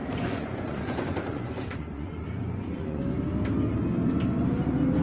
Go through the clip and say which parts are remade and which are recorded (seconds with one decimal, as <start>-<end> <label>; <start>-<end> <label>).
0.0-3.0 remade; 3.0-5.0 recorded